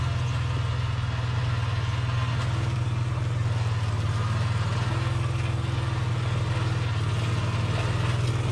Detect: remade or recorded recorded